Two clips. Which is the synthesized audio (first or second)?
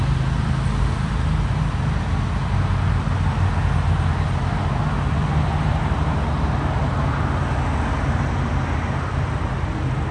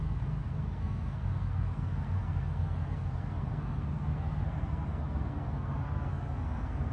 second